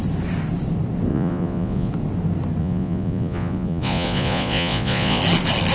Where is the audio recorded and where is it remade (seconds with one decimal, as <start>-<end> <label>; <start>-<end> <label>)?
0.0-1.1 recorded; 1.1-1.9 remade; 1.9-2.6 recorded; 2.6-5.2 remade; 5.2-5.7 recorded